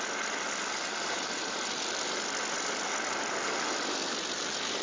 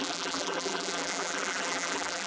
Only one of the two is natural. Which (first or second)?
first